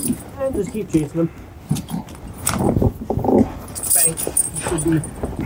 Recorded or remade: recorded